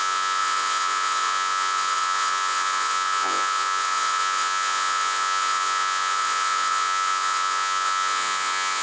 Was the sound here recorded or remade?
remade